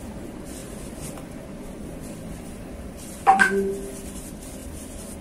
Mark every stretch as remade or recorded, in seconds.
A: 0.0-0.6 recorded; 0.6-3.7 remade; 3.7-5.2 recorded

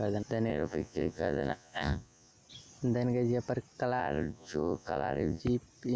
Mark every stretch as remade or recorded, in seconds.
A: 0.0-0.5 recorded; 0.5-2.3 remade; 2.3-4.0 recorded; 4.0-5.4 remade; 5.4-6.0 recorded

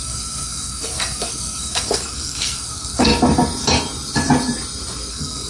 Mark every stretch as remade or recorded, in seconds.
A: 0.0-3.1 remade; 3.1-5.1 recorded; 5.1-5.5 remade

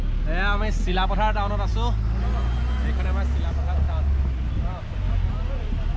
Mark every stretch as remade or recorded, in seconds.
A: 0.0-6.0 recorded

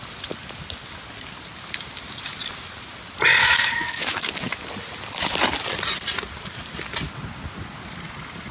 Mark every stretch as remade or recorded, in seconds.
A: 0.0-3.4 recorded; 3.4-4.3 remade; 4.3-8.5 recorded

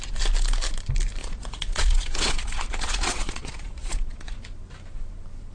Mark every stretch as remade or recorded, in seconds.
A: 0.0-1.2 recorded; 1.2-4.4 remade; 4.4-5.5 recorded